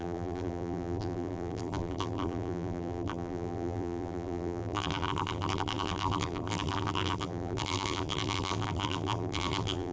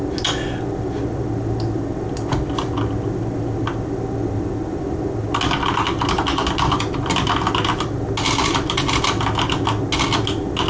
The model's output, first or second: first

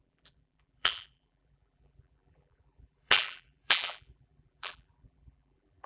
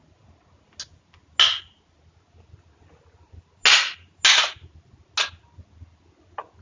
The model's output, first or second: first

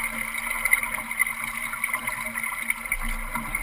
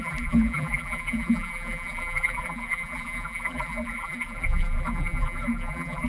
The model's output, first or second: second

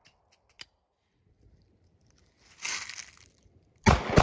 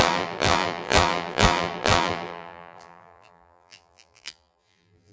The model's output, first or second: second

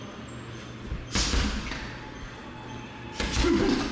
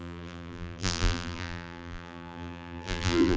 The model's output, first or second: second